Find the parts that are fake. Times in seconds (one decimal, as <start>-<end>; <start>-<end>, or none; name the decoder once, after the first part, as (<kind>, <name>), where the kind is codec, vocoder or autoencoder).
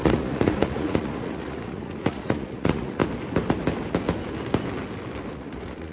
0.0-3.0 (vocoder, Vocos); 5.3-5.9